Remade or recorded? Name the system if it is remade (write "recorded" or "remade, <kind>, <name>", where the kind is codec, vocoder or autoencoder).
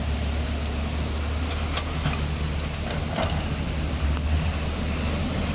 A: recorded